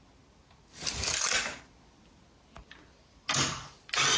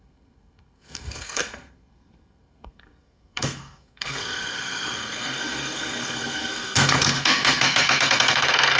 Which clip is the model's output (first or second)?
second